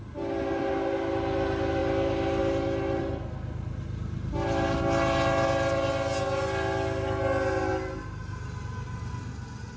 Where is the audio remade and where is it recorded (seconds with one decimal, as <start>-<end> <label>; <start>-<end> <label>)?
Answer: 0.0-9.8 recorded